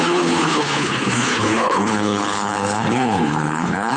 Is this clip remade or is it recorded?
remade